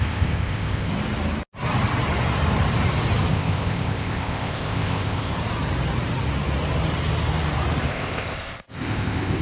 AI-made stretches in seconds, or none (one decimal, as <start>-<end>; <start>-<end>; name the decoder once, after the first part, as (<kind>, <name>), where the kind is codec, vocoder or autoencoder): 0.0-0.9 (codec, ZipCodec); 3.3-5.3; 7.9-9.4